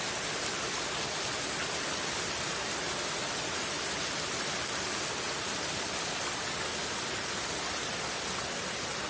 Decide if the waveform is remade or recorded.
recorded